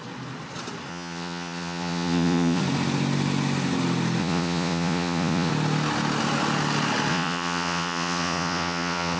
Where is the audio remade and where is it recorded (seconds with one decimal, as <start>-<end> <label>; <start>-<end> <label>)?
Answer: 0.0-0.9 recorded; 0.9-2.6 remade; 2.6-4.2 recorded; 4.2-5.5 remade; 5.5-7.1 recorded; 7.1-9.2 remade

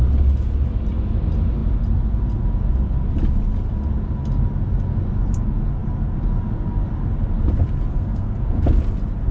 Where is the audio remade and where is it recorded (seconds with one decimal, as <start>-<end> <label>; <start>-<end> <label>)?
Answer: 0.0-7.9 recorded; 7.9-8.6 remade; 8.6-9.3 recorded

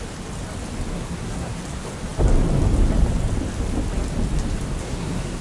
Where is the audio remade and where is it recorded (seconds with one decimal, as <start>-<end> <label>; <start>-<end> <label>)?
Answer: 0.0-0.9 recorded; 0.9-1.6 remade; 1.6-4.8 recorded; 4.8-5.4 remade

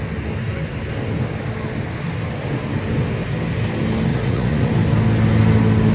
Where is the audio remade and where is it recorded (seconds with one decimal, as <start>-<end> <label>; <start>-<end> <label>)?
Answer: 0.0-4.1 recorded; 4.1-4.7 remade; 4.7-5.9 recorded

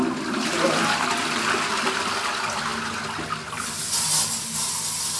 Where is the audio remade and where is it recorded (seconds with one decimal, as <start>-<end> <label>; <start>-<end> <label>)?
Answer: 0.0-5.2 recorded

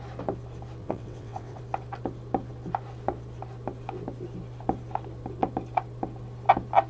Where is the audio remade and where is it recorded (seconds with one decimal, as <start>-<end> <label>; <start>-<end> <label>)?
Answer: 0.0-0.8 recorded; 0.8-1.6 remade; 1.6-6.9 recorded

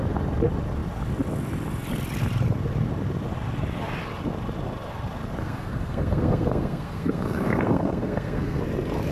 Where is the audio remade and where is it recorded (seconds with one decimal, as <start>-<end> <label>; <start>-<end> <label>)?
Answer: 0.0-5.4 recorded; 5.4-8.6 remade; 8.6-9.1 recorded